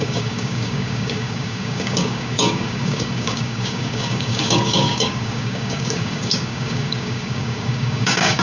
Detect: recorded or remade remade